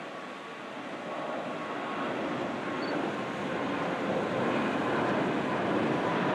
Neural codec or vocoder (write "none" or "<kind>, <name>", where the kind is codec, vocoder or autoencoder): none